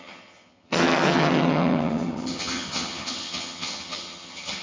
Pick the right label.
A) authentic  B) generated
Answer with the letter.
B